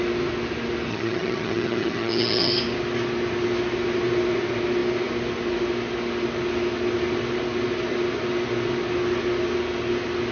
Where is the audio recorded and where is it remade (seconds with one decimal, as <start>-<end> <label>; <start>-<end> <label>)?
0.0-0.9 recorded; 0.9-2.5 remade; 2.5-10.3 recorded